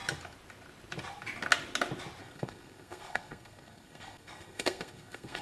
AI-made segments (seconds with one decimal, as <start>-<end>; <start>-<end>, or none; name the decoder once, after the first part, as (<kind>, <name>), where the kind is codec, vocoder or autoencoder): 2.2-5.4 (codec, SNAC)